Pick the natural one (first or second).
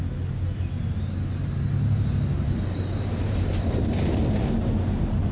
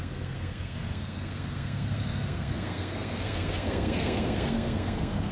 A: first